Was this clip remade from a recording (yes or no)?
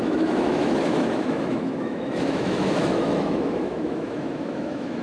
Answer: yes